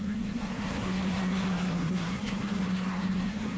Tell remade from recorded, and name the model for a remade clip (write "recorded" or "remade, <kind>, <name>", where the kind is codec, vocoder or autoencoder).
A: remade, codec, SNAC